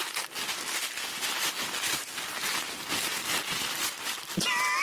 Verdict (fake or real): real